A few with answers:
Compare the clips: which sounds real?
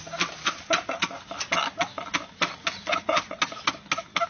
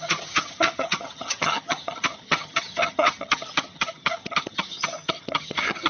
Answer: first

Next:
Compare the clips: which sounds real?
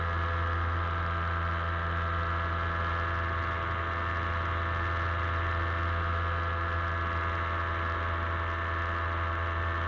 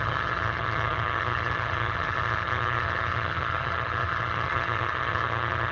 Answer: first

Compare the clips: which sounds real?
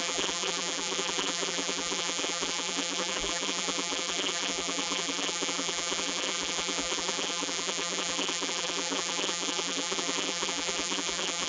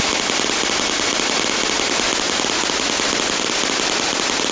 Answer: second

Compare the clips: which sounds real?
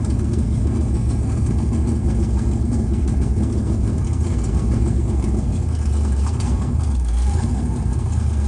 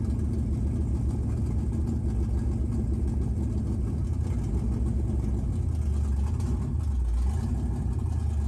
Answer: second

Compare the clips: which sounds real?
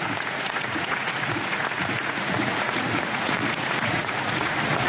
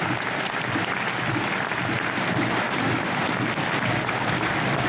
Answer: second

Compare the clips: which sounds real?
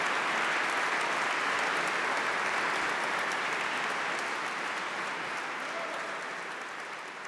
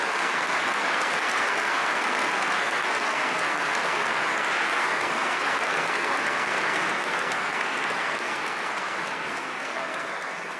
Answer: first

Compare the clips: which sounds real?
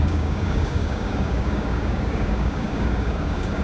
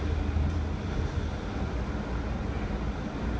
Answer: second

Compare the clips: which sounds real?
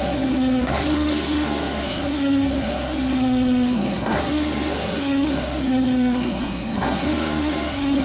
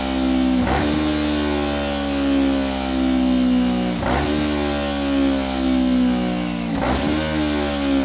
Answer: second